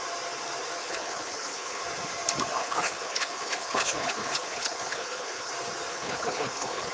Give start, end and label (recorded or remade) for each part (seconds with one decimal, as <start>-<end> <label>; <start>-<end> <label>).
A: 0.0-0.8 recorded; 0.8-1.8 remade; 1.8-2.6 recorded; 2.6-5.5 remade; 5.5-5.9 recorded; 5.9-6.9 remade